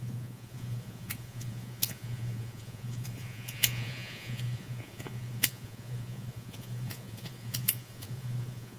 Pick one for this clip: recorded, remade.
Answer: remade